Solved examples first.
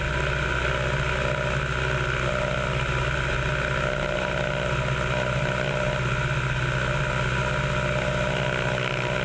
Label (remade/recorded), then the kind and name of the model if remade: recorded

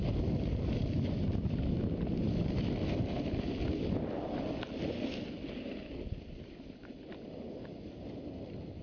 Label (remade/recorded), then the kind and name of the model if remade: recorded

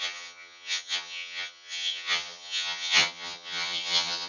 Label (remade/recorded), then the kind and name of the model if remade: remade, vocoder, HiFi-GAN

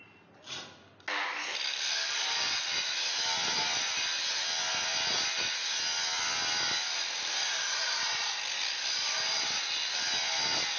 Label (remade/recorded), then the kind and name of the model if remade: recorded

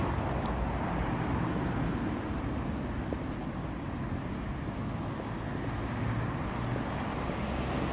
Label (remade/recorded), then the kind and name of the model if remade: recorded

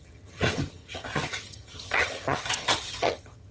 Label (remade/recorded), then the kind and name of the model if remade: remade, vocoder, HiFi-GAN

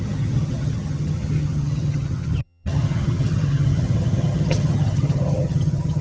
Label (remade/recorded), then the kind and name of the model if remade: remade, vocoder, HiFi-GAN